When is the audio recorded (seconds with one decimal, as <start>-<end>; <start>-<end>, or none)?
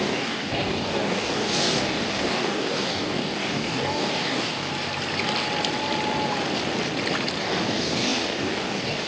4.7-7.4